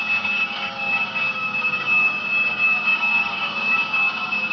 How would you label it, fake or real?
fake